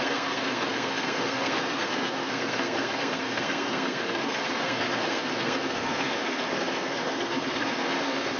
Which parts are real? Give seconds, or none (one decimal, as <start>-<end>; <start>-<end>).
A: none